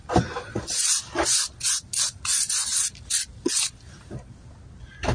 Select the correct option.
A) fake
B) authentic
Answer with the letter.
B